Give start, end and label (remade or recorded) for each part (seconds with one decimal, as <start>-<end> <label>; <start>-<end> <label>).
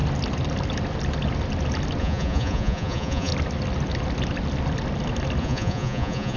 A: 0.0-2.0 recorded; 2.0-3.3 remade; 3.3-5.4 recorded; 5.4-6.4 remade